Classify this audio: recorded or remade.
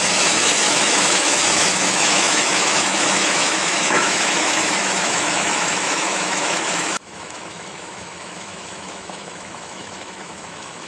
remade